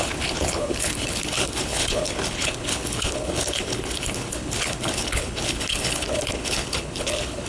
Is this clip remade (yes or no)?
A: yes